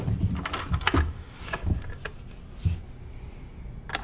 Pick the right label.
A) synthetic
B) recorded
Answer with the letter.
B